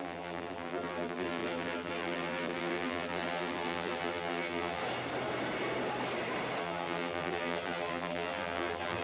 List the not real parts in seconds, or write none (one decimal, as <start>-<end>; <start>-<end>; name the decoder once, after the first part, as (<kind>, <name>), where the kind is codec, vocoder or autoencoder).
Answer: 0.0-4.8 (vocoder, BigVGAN v2); 6.6-9.0